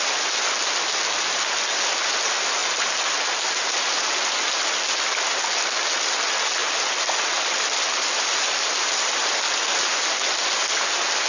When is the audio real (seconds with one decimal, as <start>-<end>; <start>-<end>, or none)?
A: 0.0-11.3

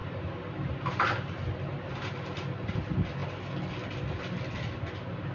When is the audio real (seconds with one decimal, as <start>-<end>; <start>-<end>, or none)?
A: 0.7-5.3

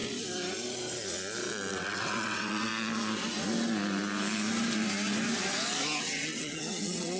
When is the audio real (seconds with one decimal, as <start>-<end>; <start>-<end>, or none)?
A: 0.0-1.7; 2.7-6.0

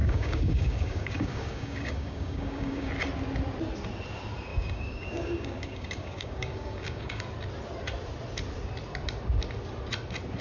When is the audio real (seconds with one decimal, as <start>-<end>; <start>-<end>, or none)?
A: 2.9-4.5; 7.2-10.4

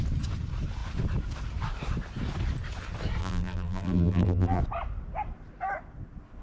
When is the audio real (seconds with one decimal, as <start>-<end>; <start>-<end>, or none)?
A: 0.0-3.2; 4.6-6.4

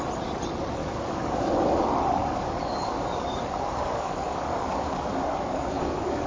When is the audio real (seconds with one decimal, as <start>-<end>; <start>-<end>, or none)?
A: 0.0-0.8; 1.8-2.2

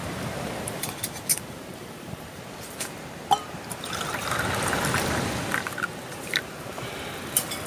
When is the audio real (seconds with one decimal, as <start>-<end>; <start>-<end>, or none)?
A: 0.9-1.3; 2.4-7.7

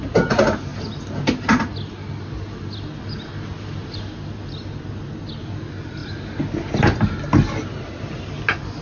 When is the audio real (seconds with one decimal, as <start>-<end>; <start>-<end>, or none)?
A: 0.0-8.8